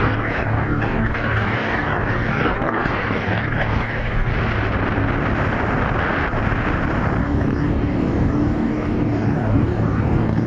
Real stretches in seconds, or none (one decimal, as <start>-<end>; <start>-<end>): 4.3-7.2